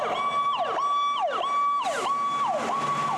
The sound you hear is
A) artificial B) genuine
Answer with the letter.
B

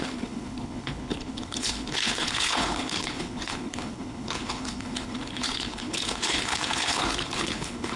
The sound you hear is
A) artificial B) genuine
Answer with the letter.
A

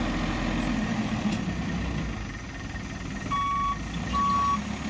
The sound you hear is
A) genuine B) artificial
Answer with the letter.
A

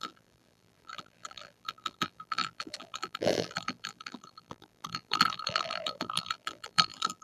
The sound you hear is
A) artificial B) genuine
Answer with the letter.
A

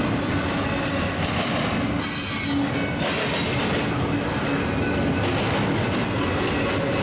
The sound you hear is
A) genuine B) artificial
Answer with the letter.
A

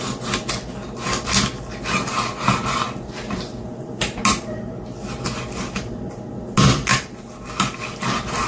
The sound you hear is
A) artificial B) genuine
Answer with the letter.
B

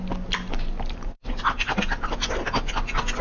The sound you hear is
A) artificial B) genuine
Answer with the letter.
B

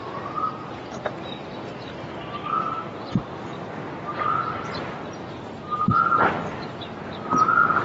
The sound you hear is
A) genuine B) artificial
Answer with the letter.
A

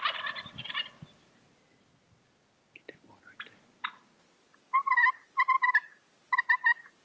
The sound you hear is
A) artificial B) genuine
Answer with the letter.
B